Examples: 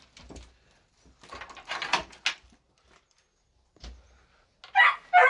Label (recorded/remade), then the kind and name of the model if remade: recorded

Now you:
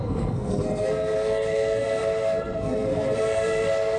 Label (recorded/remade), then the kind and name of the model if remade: remade, codec, SNAC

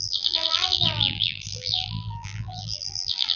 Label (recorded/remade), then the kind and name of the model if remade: remade, vocoder, BigVGAN v2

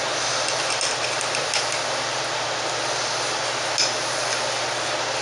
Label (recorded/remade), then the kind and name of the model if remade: recorded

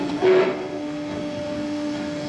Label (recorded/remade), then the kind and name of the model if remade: remade, codec, SNAC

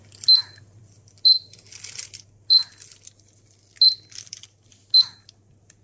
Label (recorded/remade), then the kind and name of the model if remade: recorded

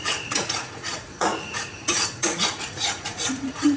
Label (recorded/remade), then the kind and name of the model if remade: remade, vocoder, Vocos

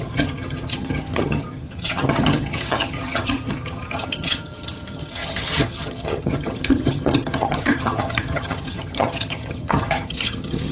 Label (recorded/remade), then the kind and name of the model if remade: remade, vocoder, HiFi-GAN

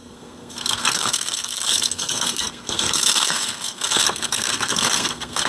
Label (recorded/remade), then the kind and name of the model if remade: remade, codec, SNAC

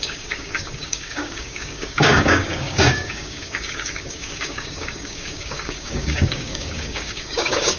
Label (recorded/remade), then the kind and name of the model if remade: remade, codec, DAC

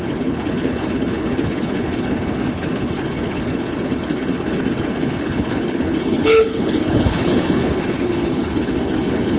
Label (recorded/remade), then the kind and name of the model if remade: remade, codec, HILCodec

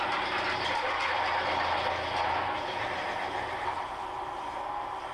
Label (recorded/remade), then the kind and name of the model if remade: recorded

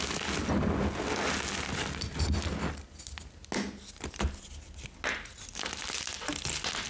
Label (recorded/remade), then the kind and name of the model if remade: recorded